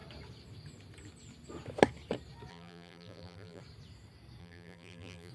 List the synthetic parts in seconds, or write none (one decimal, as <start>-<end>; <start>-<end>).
2.5-3.6; 4.4-5.3

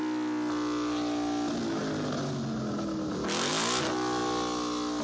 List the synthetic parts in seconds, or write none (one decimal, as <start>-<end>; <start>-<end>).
none

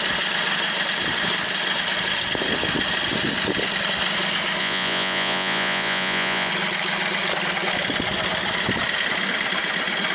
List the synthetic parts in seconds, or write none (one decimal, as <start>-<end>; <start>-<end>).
4.6-6.5

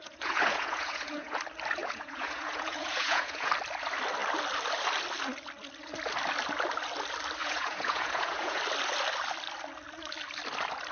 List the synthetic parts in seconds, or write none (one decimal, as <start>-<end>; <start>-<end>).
0.0-1.4; 1.8-3.5; 7.4-8.6

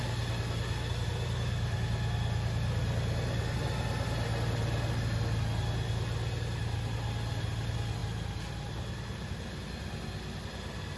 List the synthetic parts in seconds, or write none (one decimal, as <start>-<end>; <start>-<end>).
none